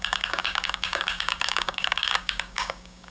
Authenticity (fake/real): fake